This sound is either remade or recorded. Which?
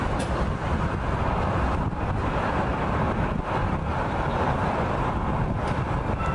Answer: remade